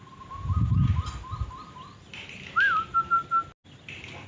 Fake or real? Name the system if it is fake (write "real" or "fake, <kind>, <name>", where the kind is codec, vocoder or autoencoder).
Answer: real